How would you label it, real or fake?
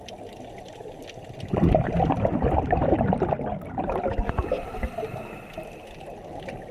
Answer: real